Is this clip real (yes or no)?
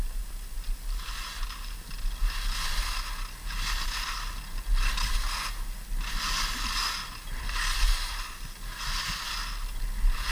yes